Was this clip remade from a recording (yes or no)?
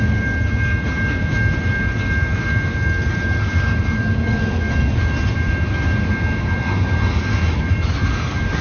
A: no